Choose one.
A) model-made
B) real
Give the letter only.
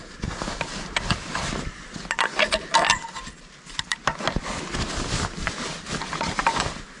B